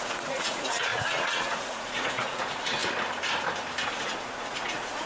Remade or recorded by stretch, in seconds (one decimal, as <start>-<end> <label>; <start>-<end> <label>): 0.0-2.8 remade; 2.8-3.9 recorded; 3.9-5.1 remade